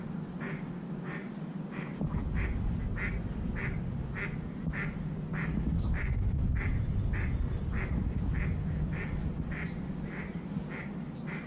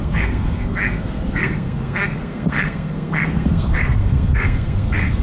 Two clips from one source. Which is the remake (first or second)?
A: second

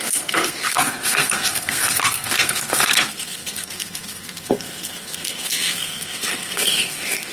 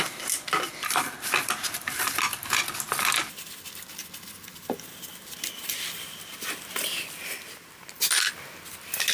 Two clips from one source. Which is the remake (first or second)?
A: first